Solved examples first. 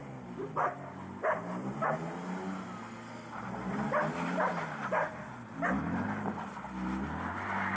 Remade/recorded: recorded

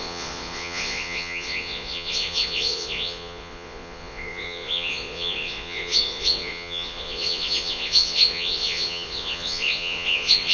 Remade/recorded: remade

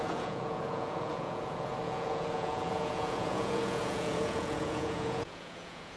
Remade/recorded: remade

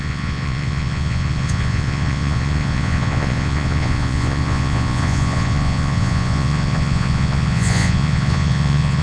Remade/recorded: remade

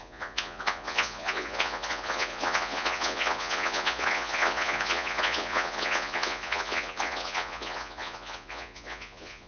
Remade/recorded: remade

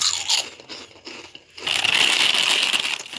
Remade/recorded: recorded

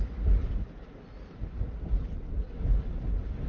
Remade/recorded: recorded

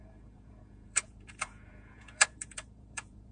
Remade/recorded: remade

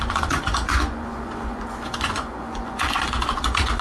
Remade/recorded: remade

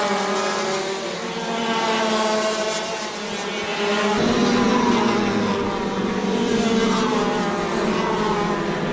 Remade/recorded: recorded